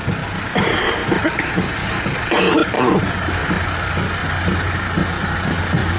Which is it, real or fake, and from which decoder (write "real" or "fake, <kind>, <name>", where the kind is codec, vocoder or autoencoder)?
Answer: real